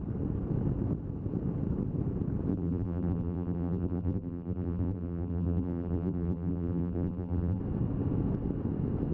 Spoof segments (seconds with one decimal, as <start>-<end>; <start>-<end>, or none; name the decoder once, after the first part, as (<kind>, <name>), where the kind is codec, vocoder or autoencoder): 2.5-7.6 (vocoder, BigVGAN v2)